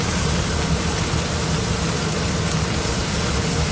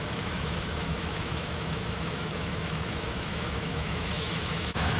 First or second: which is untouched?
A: first